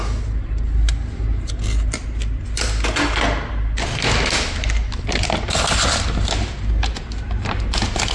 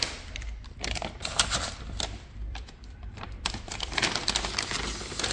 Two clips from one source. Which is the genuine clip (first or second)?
first